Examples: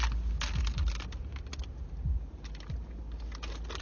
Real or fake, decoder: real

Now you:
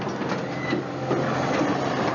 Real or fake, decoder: real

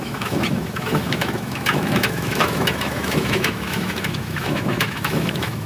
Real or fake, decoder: fake, autoencoder, DAC-VAE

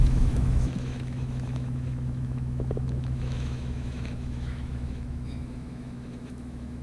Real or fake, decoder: fake, autoencoder, DAC-VAE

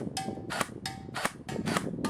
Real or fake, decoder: real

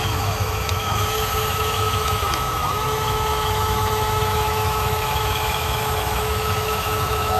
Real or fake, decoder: fake, autoencoder, DAC-VAE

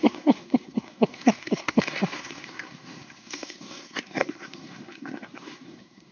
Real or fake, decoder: fake, codec, SNAC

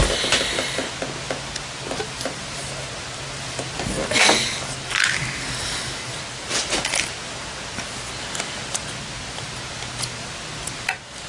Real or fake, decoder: real